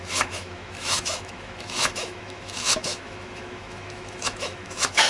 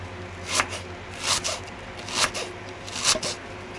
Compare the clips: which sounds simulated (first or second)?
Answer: first